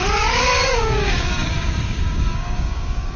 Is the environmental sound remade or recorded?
remade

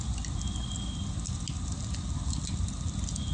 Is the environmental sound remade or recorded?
recorded